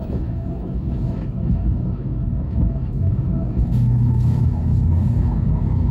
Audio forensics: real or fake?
fake